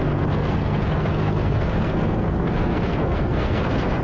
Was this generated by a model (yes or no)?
yes